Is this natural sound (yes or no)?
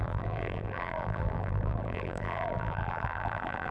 no